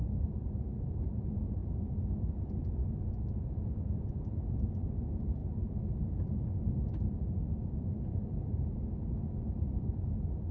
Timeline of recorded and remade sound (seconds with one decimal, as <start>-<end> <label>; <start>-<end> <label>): 0.0-2.8 remade; 2.8-3.3 recorded; 3.3-5.4 remade; 5.4-7.1 recorded; 7.1-10.5 remade